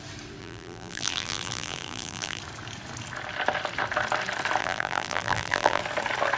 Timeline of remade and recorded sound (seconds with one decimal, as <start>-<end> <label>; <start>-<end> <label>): 0.0-0.4 recorded; 0.4-2.4 remade; 2.4-4.6 recorded; 4.6-5.8 remade; 5.8-6.4 recorded